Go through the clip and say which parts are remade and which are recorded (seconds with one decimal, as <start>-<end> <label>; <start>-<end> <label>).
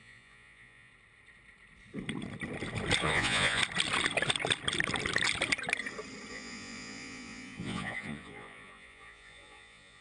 0.0-0.9 remade; 0.9-3.0 recorded; 3.0-3.6 remade; 3.6-6.3 recorded; 6.3-10.0 remade